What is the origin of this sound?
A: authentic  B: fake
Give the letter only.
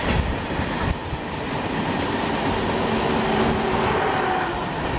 A